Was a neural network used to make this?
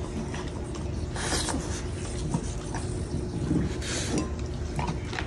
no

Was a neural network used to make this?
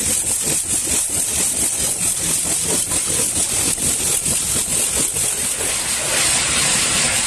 no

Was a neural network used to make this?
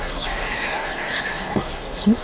yes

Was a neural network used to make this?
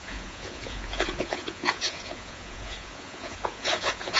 yes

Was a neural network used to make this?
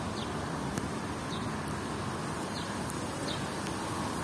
no